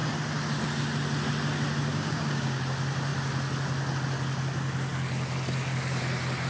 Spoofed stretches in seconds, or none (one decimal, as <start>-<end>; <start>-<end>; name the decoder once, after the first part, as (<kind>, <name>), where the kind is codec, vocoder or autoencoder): 1.9-2.6 (codec, DAC)